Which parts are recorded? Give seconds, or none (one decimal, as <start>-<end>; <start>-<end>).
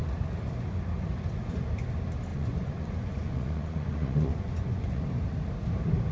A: 0.0-2.3; 5.0-6.1